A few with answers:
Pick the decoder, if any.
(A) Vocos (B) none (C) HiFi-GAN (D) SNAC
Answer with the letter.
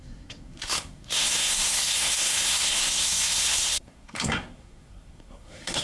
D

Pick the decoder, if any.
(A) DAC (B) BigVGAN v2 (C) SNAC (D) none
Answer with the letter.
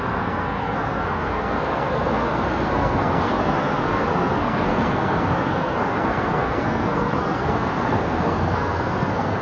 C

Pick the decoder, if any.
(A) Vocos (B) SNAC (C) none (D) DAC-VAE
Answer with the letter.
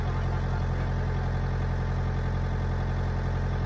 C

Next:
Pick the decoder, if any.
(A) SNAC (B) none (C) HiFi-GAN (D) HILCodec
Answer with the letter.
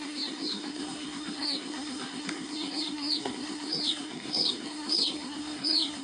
A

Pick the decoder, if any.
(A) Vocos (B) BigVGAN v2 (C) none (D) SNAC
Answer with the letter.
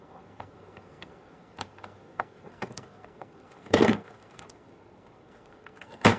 D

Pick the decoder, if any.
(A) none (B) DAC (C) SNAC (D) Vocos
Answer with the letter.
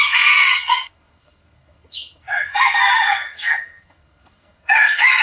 C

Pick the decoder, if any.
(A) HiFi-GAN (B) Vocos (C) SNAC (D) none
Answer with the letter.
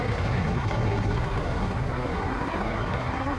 C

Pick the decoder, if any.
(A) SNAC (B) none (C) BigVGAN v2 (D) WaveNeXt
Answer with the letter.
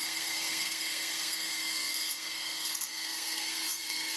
A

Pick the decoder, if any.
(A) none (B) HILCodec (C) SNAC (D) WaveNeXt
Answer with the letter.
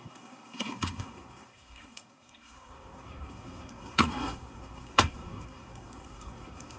C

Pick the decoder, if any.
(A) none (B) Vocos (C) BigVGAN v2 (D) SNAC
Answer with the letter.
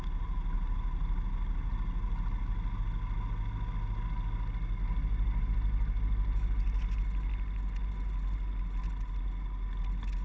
A